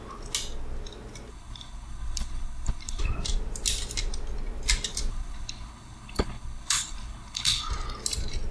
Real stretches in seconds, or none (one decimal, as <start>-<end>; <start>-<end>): 0.0-1.3; 3.0-5.1; 7.7-8.5